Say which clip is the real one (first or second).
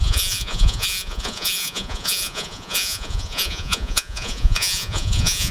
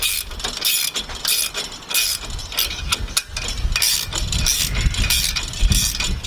second